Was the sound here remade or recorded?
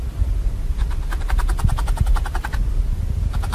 recorded